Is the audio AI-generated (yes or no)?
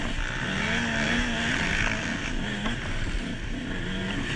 no